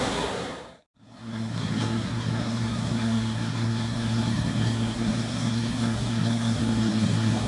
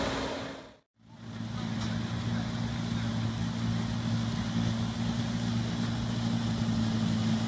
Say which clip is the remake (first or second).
first